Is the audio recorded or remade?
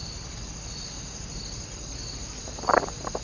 recorded